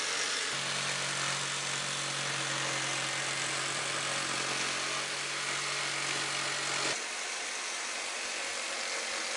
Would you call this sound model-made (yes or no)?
no